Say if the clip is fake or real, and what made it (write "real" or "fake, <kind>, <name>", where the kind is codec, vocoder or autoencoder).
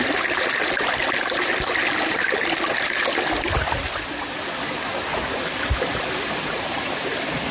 real